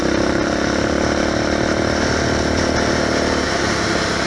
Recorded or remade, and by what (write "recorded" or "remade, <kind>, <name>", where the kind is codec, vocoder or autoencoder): recorded